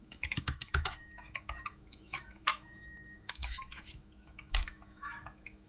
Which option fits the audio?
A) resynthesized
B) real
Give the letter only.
A